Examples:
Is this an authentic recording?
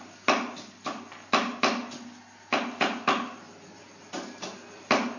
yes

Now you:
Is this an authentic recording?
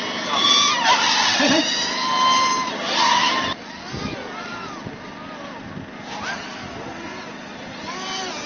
yes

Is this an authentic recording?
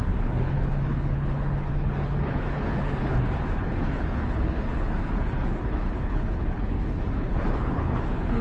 no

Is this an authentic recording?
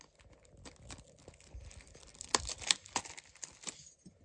yes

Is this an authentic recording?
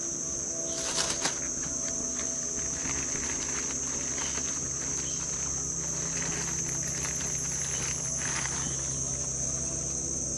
yes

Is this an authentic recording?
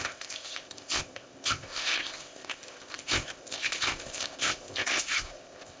no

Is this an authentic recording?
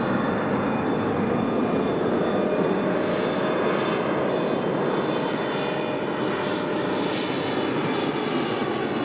yes